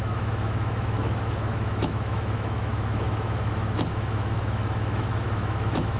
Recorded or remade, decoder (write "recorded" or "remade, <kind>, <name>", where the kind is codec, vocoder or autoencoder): remade, autoencoder, DAC-VAE